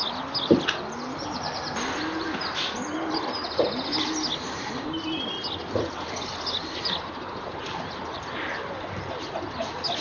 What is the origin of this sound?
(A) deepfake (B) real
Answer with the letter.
B